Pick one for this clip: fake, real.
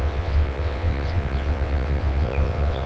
fake